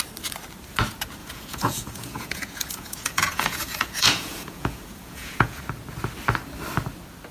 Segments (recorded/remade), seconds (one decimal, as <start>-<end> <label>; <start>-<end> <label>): 0.0-1.2 recorded; 1.2-5.6 remade; 5.6-7.3 recorded

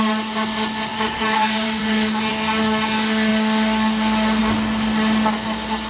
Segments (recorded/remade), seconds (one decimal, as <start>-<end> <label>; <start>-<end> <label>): 0.0-0.9 recorded; 0.9-2.3 remade; 2.3-5.9 recorded

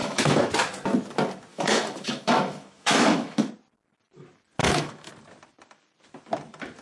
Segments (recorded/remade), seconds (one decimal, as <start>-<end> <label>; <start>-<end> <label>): 0.0-0.5 remade; 0.5-1.5 recorded; 1.5-3.5 remade; 3.5-4.6 recorded; 4.6-5.1 remade; 5.1-6.8 recorded

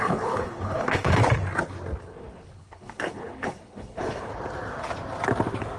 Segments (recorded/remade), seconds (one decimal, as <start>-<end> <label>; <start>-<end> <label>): 0.0-1.2 remade; 1.2-2.0 recorded; 2.0-4.3 remade; 4.3-5.8 recorded

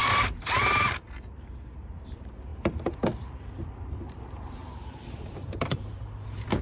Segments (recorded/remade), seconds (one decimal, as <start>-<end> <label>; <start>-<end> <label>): 0.0-6.6 remade

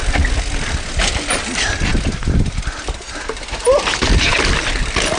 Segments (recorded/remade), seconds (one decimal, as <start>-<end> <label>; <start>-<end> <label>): 0.0-5.2 recorded

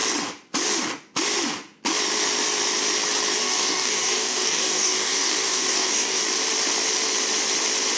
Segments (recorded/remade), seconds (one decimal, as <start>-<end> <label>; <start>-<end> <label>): 0.0-3.4 recorded; 3.4-6.2 remade; 6.2-8.0 recorded

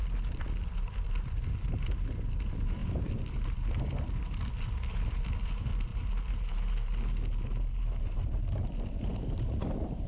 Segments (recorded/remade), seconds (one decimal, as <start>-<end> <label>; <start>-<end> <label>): 0.0-0.6 recorded; 0.6-5.9 remade; 5.9-8.0 recorded; 8.0-10.1 remade